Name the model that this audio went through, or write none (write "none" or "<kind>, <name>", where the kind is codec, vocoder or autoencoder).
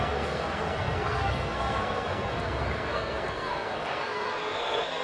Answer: codec, SNAC